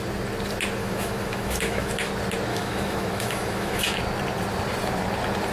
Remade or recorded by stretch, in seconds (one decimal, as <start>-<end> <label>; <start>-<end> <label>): 0.0-0.8 recorded; 0.8-2.1 remade; 2.1-2.5 recorded; 2.5-4.0 remade; 4.0-5.5 recorded